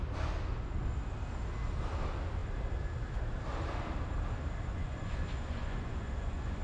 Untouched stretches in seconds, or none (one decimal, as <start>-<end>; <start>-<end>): 0.0-4.7